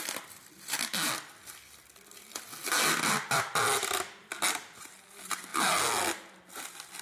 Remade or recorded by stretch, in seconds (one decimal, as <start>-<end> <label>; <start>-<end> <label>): 0.0-7.0 recorded